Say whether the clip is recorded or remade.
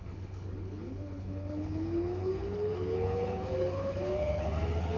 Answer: remade